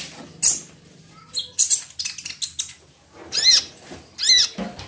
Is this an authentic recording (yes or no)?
yes